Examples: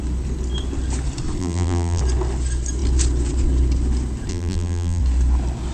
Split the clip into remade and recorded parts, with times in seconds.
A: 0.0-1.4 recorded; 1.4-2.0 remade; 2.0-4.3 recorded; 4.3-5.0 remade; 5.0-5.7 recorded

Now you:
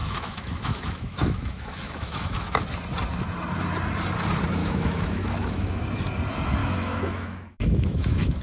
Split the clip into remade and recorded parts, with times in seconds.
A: 0.0-2.6 remade; 2.6-4.6 recorded; 4.6-5.8 remade; 5.8-6.6 recorded; 6.6-8.4 remade

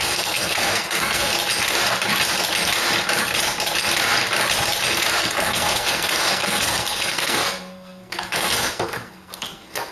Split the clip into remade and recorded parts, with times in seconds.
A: 0.0-1.3 remade; 1.3-5.2 recorded; 5.2-9.9 remade

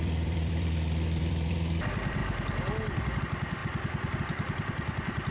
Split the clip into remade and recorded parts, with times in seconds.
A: 0.0-2.2 remade; 2.2-3.2 recorded; 3.2-5.3 remade